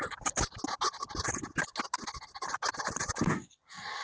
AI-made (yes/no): no